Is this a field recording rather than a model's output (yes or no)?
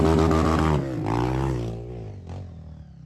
yes